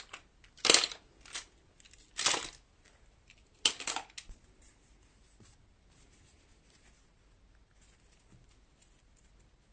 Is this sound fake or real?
real